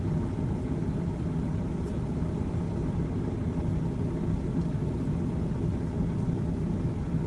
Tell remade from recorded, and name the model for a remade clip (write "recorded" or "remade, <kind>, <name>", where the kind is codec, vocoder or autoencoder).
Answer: recorded